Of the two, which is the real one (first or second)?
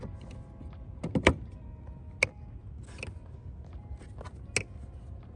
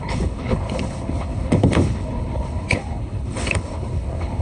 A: first